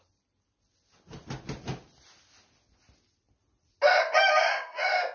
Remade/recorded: recorded